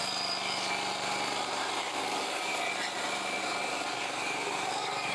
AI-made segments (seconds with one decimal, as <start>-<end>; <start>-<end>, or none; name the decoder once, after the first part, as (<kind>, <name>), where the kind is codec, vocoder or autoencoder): 1.8-2.5 (codec, DAC); 3.4-5.1